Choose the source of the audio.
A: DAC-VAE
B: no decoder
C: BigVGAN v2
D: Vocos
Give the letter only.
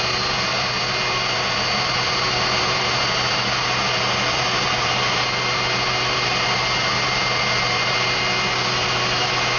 B